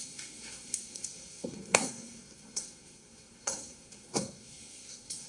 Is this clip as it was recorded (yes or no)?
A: no